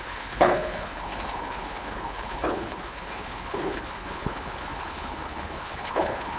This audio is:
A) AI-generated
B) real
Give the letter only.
A